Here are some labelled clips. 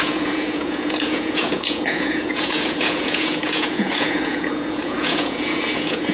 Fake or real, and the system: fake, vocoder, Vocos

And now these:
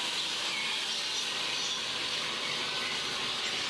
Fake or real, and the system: real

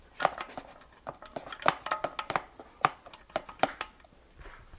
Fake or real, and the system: real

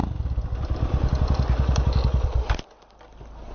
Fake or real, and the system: real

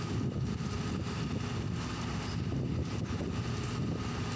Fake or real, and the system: real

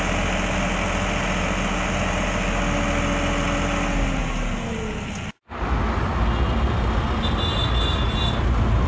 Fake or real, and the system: real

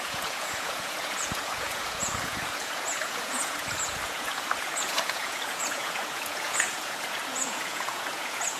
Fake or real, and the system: fake, vocoder, Vocos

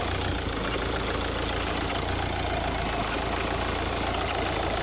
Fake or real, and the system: real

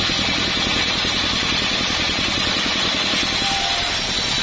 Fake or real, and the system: real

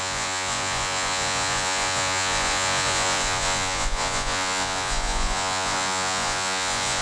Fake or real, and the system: fake, vocoder, Vocos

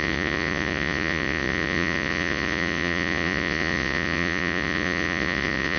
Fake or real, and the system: fake, vocoder, Vocos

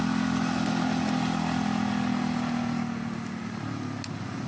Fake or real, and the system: real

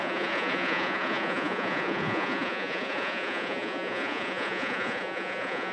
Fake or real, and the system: fake, vocoder, Vocos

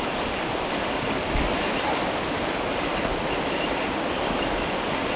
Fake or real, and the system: real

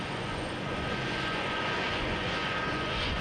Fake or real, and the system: fake, vocoder, Vocos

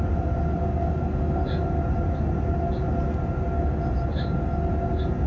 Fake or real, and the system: real